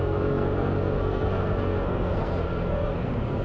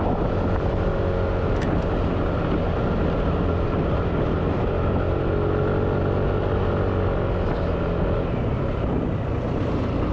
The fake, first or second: first